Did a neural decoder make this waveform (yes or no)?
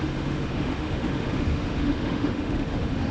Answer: yes